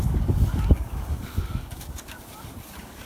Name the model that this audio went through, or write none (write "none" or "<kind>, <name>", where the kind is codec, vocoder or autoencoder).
codec, DAC